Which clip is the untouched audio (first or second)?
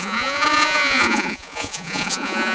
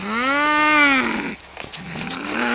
second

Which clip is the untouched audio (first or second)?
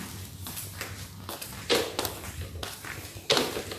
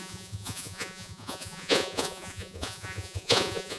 first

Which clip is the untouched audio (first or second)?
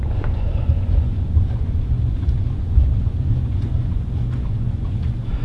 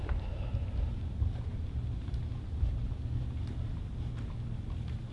second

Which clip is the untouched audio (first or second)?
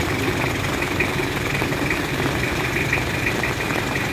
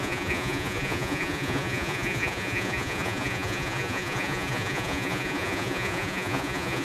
first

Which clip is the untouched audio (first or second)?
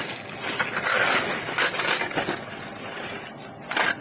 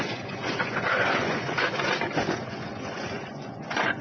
first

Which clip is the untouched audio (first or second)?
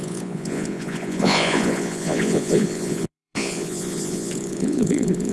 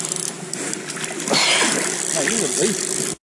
second